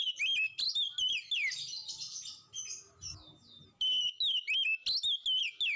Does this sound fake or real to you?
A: real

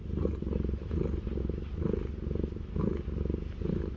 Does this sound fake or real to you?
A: real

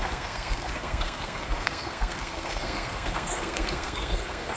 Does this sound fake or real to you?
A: fake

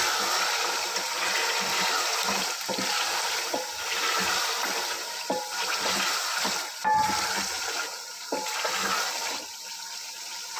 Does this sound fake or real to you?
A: real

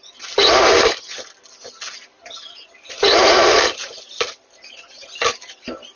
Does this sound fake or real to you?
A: real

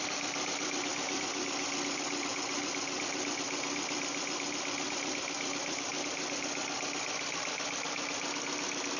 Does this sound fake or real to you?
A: real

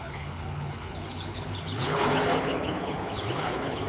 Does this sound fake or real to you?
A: fake